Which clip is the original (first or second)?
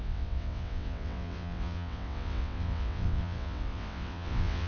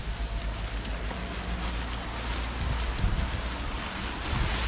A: second